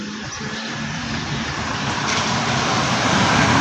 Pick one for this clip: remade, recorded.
recorded